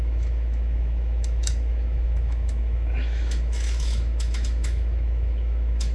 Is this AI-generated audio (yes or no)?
yes